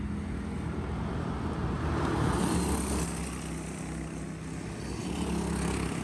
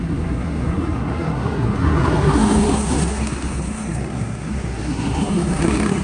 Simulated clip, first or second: second